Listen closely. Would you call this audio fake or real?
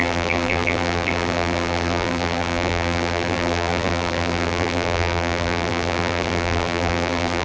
fake